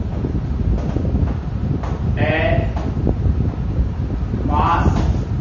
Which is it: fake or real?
real